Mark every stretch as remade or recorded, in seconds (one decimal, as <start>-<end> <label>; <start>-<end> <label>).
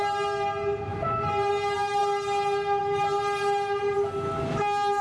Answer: 0.0-0.9 recorded; 0.9-1.5 remade; 1.5-5.0 recorded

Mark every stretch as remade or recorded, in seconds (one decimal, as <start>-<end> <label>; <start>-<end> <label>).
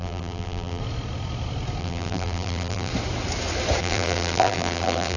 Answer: 0.0-0.8 remade; 0.8-1.8 recorded; 1.8-2.9 remade; 2.9-3.8 recorded; 3.8-5.2 remade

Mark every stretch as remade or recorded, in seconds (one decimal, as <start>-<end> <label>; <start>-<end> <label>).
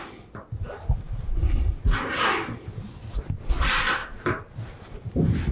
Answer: 0.0-4.0 recorded; 4.0-5.0 remade; 5.0-5.5 recorded